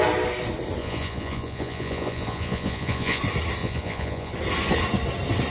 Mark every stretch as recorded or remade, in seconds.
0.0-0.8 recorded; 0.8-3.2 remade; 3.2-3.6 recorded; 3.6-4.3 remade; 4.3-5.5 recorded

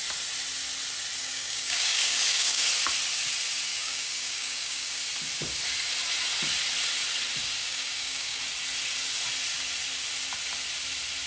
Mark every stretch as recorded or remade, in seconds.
0.0-1.2 recorded; 1.2-2.7 remade; 2.7-3.7 recorded; 3.7-5.0 remade; 5.0-7.6 recorded; 7.6-8.4 remade; 8.4-11.3 recorded

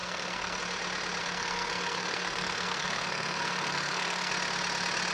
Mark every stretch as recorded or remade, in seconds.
0.0-0.6 remade; 0.6-1.2 recorded; 1.2-4.3 remade; 4.3-5.1 recorded